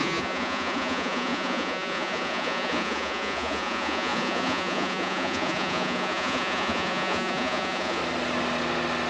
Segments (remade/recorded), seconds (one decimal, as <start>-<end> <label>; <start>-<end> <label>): 0.0-8.0 remade; 8.0-9.1 recorded